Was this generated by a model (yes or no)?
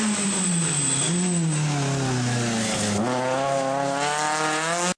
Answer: no